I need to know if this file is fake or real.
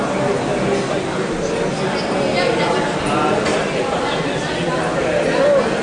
real